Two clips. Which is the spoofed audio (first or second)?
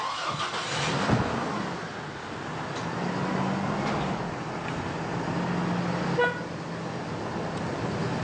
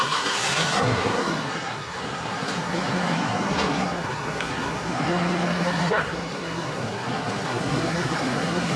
second